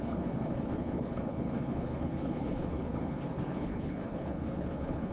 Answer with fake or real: fake